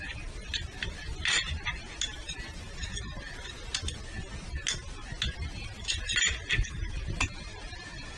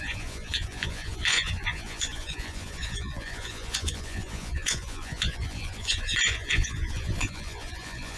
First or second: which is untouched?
first